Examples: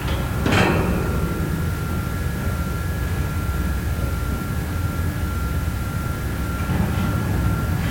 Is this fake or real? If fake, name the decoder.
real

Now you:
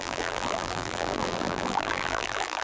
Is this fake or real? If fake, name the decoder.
fake, vocoder, BigVGAN v2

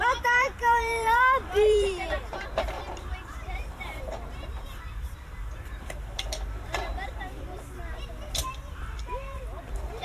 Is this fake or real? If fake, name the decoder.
fake, vocoder, BigVGAN v2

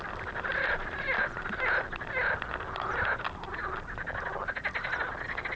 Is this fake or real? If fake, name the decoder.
real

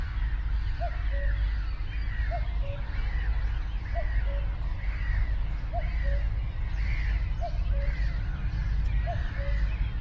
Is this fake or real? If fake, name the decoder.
real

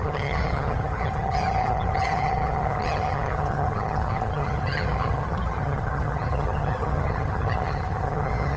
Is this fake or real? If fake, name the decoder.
fake, vocoder, HiFi-GAN